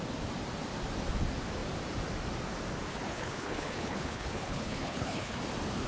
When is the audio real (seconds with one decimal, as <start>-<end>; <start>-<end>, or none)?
0.0-2.9; 5.4-5.9